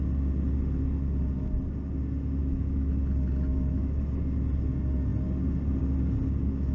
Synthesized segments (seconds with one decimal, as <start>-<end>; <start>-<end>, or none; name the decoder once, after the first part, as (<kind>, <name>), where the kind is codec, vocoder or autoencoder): 2.4-2.9 (autoencoder, DAC-VAE); 3.5-4.2